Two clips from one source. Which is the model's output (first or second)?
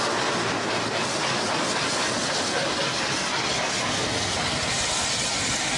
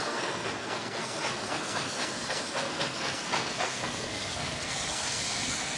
second